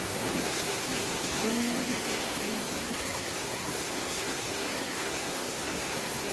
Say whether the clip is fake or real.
fake